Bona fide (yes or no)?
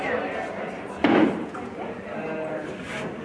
yes